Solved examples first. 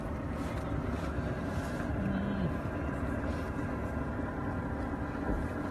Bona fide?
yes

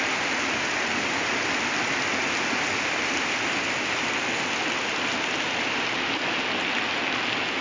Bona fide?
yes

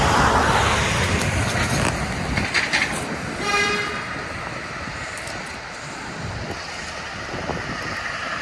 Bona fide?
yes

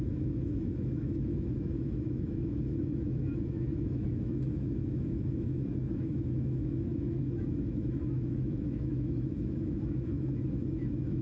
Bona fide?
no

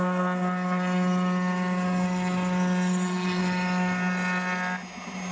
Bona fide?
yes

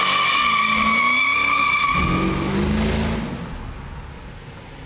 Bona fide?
yes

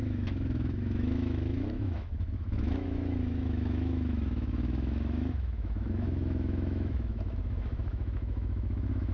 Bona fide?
no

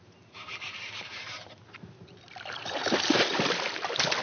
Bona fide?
yes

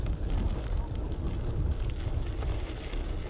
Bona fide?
yes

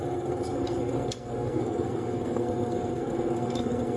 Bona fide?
no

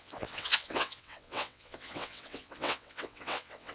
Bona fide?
no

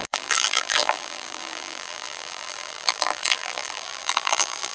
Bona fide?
no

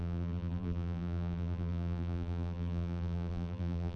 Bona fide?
no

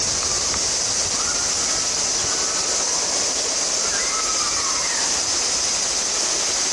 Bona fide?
no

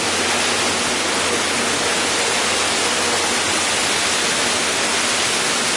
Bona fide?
yes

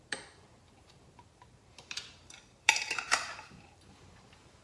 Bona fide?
no